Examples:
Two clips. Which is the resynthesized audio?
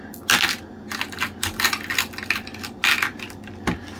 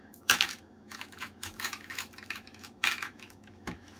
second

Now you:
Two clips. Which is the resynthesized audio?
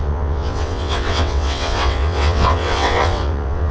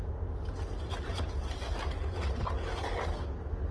first